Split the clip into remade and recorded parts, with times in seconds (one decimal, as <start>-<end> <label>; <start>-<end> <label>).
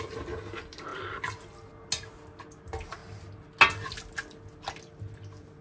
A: 0.0-5.6 recorded